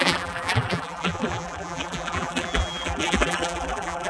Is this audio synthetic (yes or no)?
yes